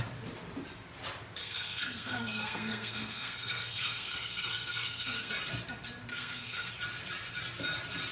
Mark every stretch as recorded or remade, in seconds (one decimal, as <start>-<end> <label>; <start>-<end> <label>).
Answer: 0.0-1.4 recorded; 1.4-5.3 remade; 5.3-6.1 recorded; 6.1-6.7 remade; 6.7-8.1 recorded